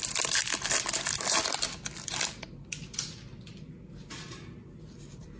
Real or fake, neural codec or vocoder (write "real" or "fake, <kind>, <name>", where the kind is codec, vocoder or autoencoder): real